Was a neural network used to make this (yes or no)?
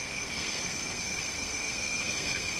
yes